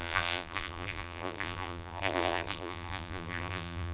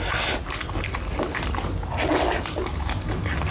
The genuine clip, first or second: second